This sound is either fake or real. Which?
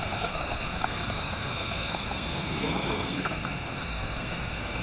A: fake